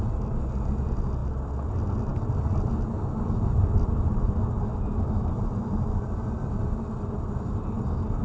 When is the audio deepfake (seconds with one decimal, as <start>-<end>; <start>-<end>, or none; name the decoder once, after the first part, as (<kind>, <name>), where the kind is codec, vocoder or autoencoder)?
none

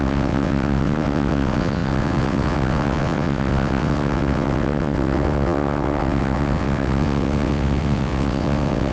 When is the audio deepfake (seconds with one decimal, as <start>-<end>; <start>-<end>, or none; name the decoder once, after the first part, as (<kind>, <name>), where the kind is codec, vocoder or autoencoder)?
0.0-8.9 (vocoder, WaveNeXt)

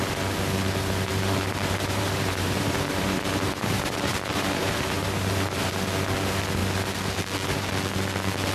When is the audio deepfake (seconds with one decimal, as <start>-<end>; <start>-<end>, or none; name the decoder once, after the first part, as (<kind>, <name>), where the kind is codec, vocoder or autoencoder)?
1.1-5.7 (vocoder, BigVGAN v2)

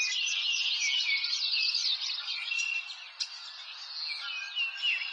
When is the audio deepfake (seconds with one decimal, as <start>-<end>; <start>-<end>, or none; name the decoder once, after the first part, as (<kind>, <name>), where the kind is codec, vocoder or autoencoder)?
1.8-2.6 (vocoder, BigVGAN v2)

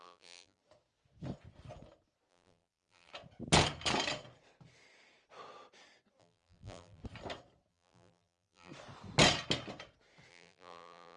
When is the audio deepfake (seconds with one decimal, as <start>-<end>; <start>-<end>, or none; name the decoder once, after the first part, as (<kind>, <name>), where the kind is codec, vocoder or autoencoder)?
0.0-0.6 (vocoder, BigVGAN v2); 2.3-3.1; 6.2-7.0; 7.7-8.7; 10.3-11.2

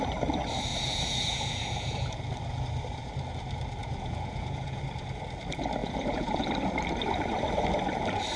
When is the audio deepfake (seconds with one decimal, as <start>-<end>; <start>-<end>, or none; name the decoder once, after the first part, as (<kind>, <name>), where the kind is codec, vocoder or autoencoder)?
0.7-2.2 (vocoder, Vocos); 3.8-4.8; 5.8-6.5

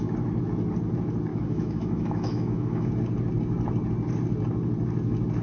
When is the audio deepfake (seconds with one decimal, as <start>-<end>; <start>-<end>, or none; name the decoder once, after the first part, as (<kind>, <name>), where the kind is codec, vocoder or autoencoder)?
1.3-2.9 (autoencoder, DAC-VAE)

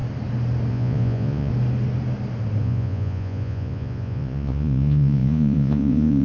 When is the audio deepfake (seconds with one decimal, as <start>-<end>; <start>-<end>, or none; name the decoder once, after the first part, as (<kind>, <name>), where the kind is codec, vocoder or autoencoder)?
0.7-1.5 (vocoder, Vocos); 2.6-6.2